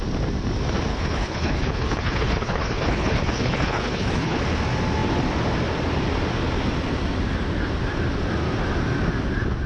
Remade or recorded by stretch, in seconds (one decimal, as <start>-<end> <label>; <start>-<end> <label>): 0.0-0.9 recorded; 0.9-4.4 remade; 4.4-9.7 recorded